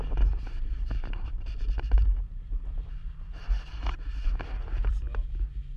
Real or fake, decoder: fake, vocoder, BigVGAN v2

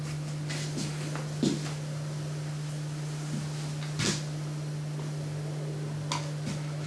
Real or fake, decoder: real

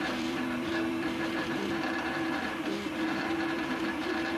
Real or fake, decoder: fake, vocoder, BigVGAN v2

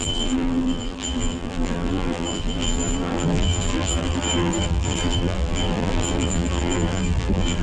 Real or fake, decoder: fake, vocoder, BigVGAN v2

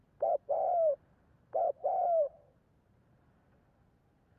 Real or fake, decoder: fake, vocoder, BigVGAN v2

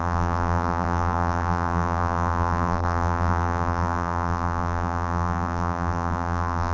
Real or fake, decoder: fake, vocoder, BigVGAN v2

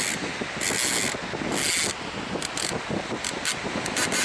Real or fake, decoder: real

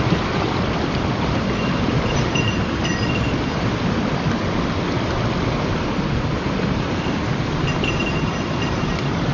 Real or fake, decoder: fake, vocoder, BigVGAN v2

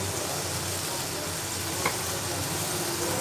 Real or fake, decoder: real